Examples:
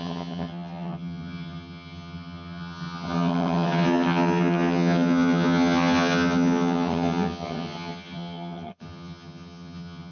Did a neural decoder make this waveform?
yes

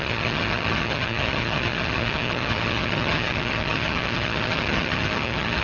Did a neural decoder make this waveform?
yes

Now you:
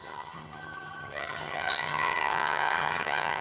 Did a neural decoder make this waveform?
yes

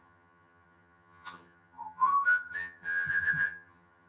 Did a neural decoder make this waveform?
yes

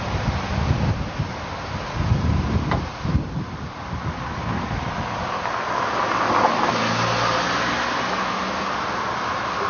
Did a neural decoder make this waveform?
no